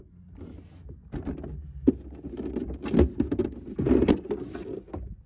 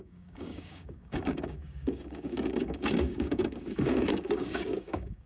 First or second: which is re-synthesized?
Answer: second